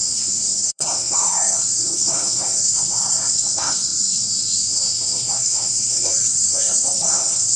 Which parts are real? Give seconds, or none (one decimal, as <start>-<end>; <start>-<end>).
none